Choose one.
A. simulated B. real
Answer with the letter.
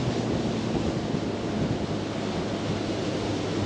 B